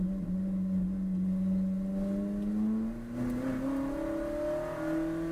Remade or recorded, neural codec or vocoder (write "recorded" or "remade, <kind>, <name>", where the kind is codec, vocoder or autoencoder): recorded